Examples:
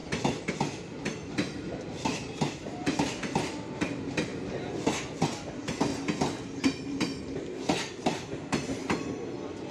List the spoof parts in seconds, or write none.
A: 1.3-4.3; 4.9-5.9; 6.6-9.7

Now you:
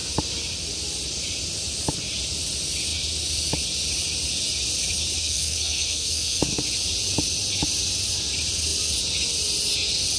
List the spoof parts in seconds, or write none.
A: 5.2-6.6

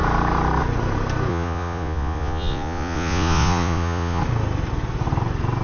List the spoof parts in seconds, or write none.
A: 1.3-4.2

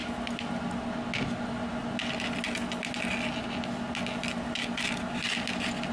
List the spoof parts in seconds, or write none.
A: none

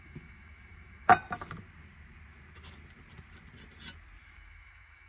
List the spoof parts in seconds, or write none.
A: 0.0-1.1; 4.2-5.1

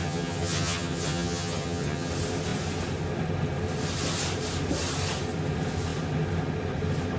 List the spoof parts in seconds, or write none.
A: 0.0-2.1

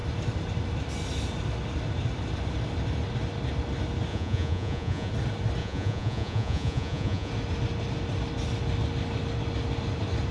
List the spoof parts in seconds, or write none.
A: 4.1-5.1; 5.6-7.3